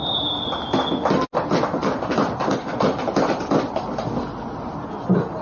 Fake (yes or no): no